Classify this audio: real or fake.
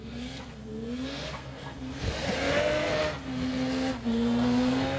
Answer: fake